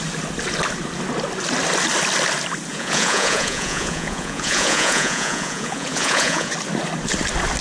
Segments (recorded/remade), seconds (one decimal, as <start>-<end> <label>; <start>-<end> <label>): 0.0-2.7 recorded; 2.7-6.5 remade; 6.5-7.6 recorded